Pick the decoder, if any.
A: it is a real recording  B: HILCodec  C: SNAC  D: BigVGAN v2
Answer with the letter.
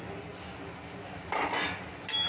A